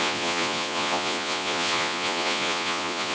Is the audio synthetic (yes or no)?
yes